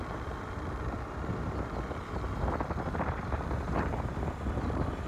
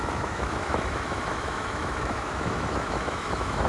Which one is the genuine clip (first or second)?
first